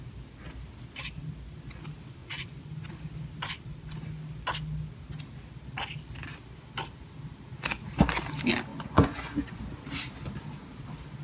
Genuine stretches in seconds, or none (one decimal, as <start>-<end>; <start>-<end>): 0.0-2.2; 2.7-8.7; 9.6-11.2